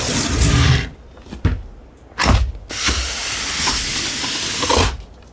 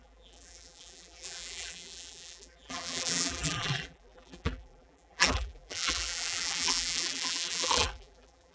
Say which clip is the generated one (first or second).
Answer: second